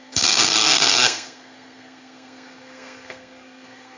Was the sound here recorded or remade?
remade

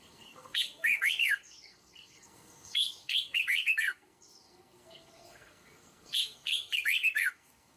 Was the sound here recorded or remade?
remade